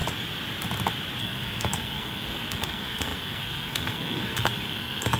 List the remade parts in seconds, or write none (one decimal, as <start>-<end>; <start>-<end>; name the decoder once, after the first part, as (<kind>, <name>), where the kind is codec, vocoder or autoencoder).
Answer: 1.2-5.2 (codec, SNAC)